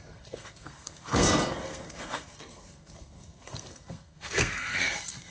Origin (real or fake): fake